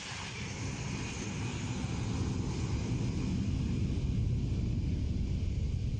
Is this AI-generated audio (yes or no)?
no